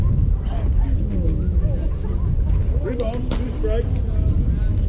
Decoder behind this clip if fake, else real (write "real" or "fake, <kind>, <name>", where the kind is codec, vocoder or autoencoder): real